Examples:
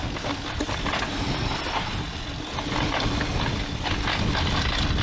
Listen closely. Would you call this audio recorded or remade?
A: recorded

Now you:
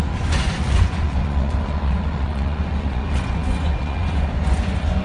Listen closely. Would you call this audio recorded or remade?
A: remade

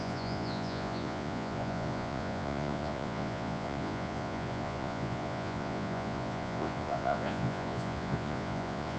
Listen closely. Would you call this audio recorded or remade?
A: remade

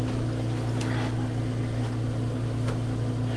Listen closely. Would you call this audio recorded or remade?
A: recorded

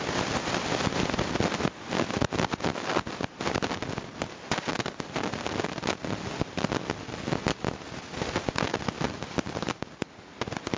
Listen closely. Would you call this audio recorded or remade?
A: recorded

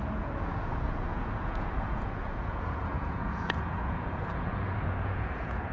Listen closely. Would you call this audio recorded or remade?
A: remade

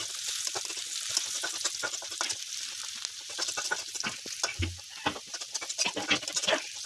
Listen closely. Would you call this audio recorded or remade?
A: recorded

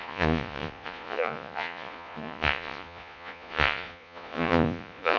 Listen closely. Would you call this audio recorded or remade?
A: remade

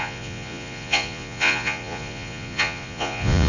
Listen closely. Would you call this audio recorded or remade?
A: remade